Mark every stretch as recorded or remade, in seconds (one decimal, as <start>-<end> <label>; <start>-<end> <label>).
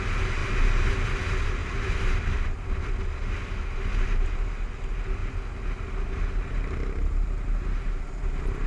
0.0-1.6 recorded; 1.6-2.9 remade; 2.9-8.7 recorded